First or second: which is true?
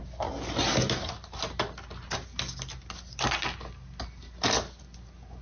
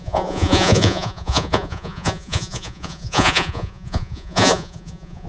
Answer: first